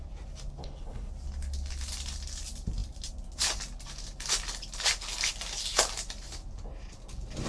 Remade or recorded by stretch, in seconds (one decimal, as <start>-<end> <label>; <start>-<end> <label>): 0.0-0.6 recorded; 0.6-1.1 remade; 1.1-7.5 recorded